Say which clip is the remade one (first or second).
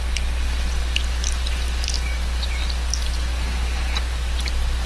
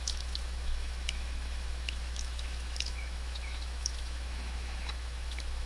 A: second